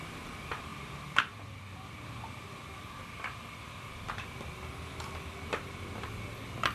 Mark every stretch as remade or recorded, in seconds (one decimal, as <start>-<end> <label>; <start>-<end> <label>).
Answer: 0.0-6.7 recorded